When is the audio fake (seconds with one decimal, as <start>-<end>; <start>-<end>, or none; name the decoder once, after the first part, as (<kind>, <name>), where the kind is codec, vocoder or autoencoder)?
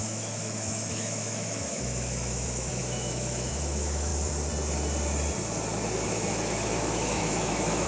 0.0-4.1 (autoencoder, DAC-VAE); 6.1-7.9